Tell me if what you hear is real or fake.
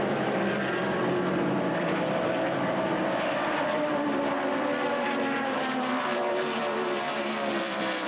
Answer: fake